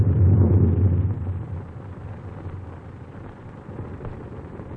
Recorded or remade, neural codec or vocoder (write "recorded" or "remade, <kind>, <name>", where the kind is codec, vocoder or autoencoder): recorded